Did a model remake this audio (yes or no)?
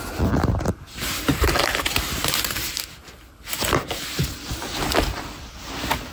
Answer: no